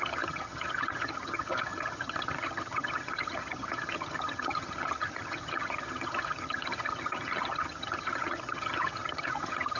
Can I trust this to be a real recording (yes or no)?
no